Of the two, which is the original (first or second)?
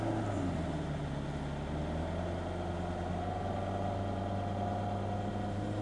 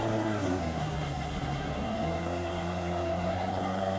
first